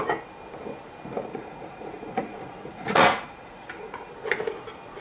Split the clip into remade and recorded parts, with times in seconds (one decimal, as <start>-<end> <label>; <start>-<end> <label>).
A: 0.0-1.3 recorded; 1.3-4.1 remade; 4.1-5.0 recorded